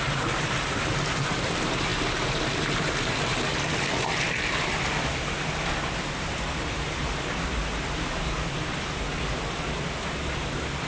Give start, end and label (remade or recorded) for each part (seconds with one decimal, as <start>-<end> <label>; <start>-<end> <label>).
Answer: 0.0-10.9 recorded

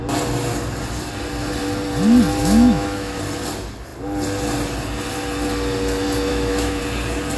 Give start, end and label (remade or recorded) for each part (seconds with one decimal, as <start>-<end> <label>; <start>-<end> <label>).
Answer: 0.0-2.4 recorded; 2.4-3.2 remade; 3.2-6.3 recorded; 6.3-6.8 remade; 6.8-7.4 recorded

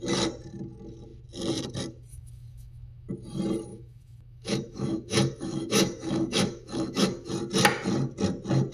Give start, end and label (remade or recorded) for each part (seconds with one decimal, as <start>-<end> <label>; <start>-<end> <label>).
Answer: 0.0-2.1 recorded; 2.1-3.1 remade; 3.1-3.7 recorded; 3.7-7.3 remade; 7.3-8.7 recorded

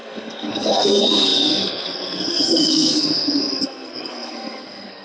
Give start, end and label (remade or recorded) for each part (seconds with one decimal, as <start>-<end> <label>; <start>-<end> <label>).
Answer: 0.0-5.0 remade